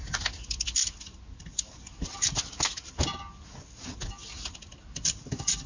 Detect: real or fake real